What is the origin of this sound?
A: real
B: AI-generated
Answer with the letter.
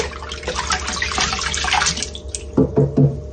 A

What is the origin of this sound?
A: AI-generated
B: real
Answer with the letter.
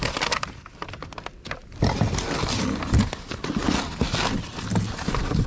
B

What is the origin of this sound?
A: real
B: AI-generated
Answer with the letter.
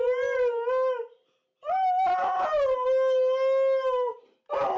A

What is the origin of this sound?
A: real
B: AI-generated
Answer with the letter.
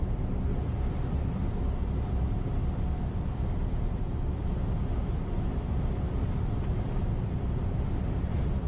A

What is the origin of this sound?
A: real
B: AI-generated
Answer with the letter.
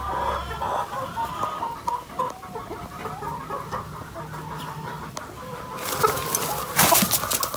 A